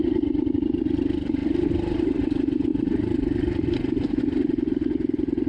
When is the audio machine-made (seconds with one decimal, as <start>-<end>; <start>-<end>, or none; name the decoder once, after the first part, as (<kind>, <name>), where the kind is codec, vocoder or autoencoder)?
none